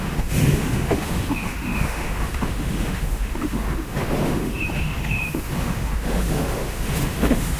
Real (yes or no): no